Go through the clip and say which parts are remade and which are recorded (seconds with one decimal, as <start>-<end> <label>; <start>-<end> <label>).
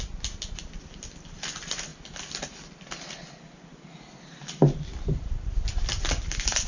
0.0-1.9 remade; 1.9-4.2 recorded; 4.2-6.7 remade